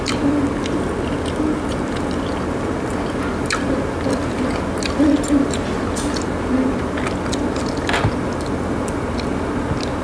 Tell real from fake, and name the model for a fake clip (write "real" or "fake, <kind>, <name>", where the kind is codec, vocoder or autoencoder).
real